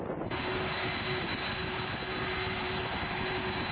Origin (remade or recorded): recorded